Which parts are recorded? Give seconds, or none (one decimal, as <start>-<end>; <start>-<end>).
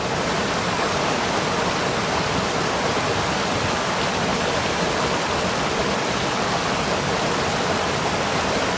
0.0-8.8